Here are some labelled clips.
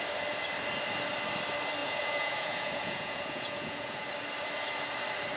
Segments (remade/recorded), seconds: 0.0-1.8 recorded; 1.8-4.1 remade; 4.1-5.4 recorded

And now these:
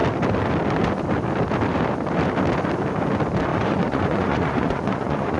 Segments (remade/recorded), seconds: 0.0-3.5 recorded; 3.5-5.4 remade

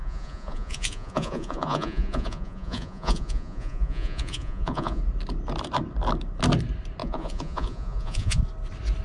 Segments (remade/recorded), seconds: 0.0-5.0 remade; 5.0-7.0 recorded; 7.0-8.4 remade; 8.4-9.0 recorded

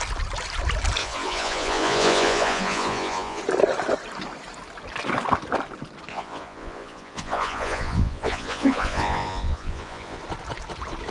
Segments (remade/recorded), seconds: 0.0-1.0 recorded; 1.0-3.4 remade; 3.4-6.1 recorded; 6.1-10.2 remade; 10.2-11.1 recorded

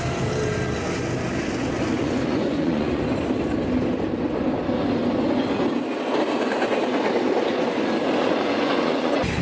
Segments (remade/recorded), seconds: 0.0-1.9 recorded; 1.9-3.0 remade; 3.0-8.2 recorded; 8.2-9.4 remade

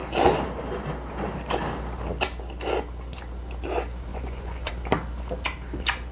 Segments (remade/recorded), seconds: 0.0-4.1 recorded; 4.1-4.7 remade; 4.7-6.1 recorded